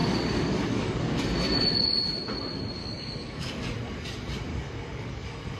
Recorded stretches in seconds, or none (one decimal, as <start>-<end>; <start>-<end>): 1.2-2.8; 3.6-4.5

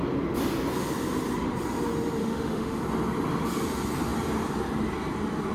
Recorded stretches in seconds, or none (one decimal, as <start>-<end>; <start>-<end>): 0.0-2.2; 2.8-5.5

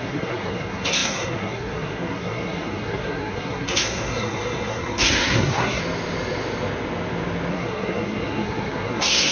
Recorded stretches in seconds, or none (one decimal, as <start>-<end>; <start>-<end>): 5.8-7.5

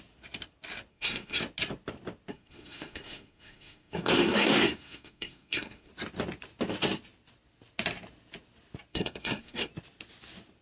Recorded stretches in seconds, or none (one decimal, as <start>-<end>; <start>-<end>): 0.0-0.9; 1.4-2.3; 5.9-8.9; 9.7-10.6

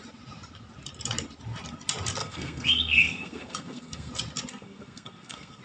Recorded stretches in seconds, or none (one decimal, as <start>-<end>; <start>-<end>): 0.0-2.2; 4.1-4.5